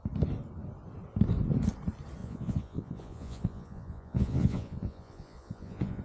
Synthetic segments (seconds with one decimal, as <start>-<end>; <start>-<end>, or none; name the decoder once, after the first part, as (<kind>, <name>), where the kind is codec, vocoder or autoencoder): 2.2-6.0 (vocoder, Vocos)